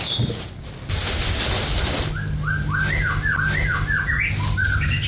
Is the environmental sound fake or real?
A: real